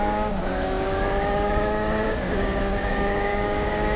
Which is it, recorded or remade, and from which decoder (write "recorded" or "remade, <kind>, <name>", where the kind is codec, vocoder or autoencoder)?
remade, codec, DAC